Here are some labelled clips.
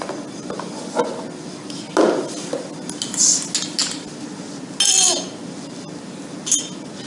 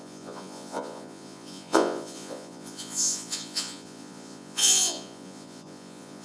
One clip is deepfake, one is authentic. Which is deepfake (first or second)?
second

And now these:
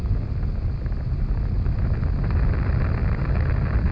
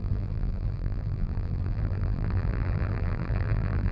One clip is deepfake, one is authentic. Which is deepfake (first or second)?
second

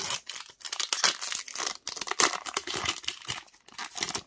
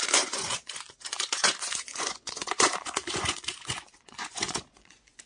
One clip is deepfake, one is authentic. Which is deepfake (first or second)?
second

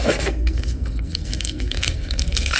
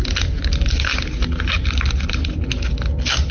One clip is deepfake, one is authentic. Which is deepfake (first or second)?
first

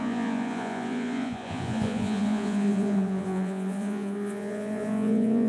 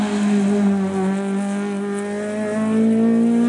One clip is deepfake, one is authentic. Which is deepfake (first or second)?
first